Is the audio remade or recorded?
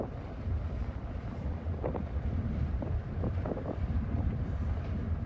remade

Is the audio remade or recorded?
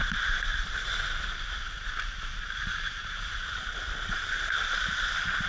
remade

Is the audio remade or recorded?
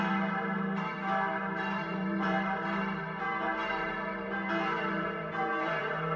remade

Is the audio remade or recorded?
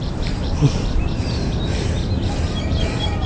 remade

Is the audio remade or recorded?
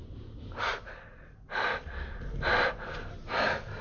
recorded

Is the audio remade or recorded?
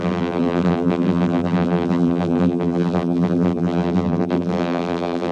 remade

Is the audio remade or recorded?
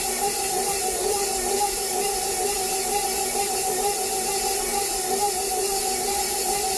remade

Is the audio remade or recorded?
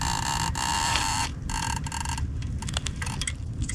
recorded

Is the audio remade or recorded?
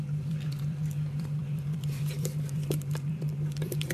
remade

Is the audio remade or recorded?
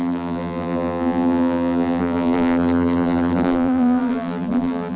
remade